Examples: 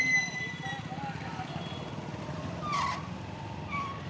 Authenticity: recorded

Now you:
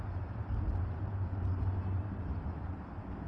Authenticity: recorded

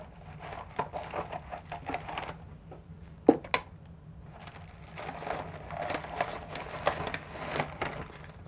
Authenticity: recorded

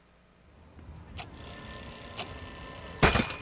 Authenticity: recorded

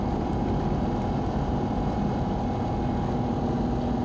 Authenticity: recorded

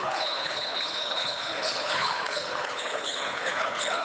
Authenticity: remade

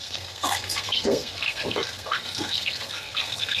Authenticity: remade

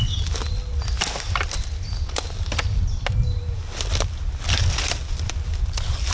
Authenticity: recorded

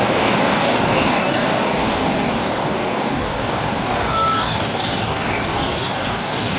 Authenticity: remade